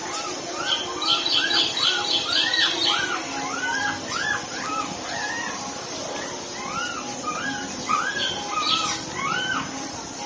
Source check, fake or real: real